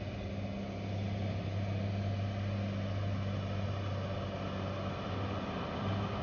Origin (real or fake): real